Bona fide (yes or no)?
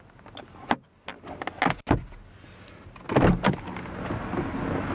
yes